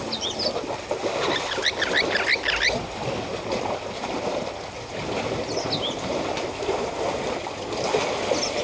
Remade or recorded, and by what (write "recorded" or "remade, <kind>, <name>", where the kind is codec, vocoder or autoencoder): recorded